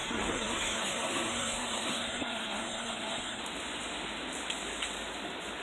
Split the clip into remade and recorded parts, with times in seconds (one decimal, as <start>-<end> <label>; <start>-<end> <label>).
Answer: 0.0-3.4 remade; 3.4-5.6 recorded